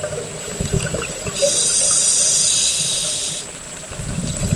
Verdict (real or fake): real